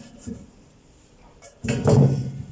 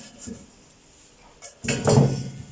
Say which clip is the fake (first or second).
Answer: first